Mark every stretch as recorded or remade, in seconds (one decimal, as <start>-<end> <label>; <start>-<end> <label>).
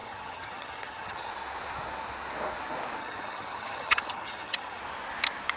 0.0-1.3 remade; 1.3-3.0 recorded; 3.0-4.8 remade; 4.8-5.6 recorded